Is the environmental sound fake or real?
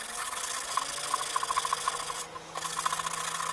real